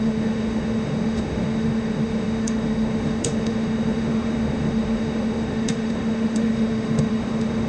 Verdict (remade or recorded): remade